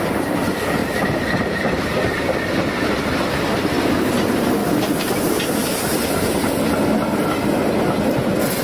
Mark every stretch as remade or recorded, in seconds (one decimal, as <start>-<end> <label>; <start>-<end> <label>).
0.0-0.8 recorded; 0.8-2.5 remade; 2.5-4.6 recorded; 4.6-5.1 remade; 5.1-8.6 recorded